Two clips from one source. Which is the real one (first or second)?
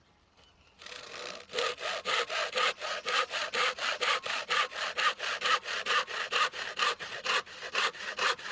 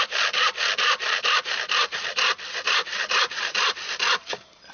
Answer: second